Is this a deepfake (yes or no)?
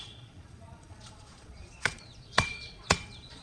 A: yes